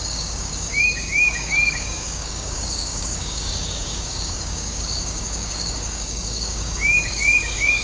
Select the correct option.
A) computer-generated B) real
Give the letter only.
A